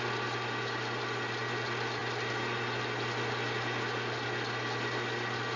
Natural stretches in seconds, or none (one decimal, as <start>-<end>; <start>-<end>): 0.0-5.6